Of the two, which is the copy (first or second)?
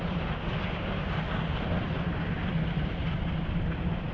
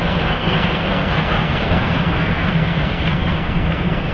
second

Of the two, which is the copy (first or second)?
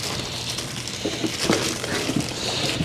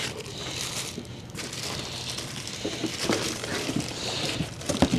second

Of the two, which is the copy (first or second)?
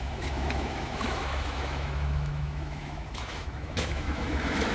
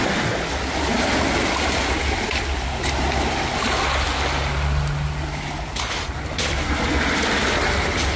first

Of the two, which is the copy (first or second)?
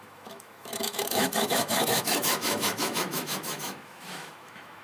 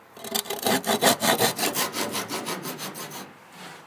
first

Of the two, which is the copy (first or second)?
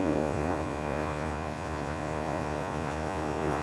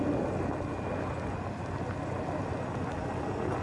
first